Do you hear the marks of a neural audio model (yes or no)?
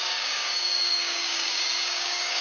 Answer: yes